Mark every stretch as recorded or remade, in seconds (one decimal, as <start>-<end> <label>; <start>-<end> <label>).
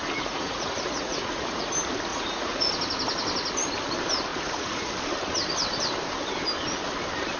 0.0-1.7 remade; 1.7-2.1 recorded; 2.1-2.7 remade; 2.7-4.3 recorded; 4.3-4.9 remade; 4.9-7.4 recorded